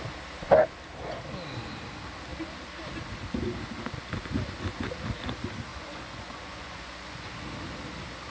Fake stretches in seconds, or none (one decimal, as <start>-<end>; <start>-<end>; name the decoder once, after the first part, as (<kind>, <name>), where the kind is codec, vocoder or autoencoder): 5.7-7.3 (vocoder, Vocos)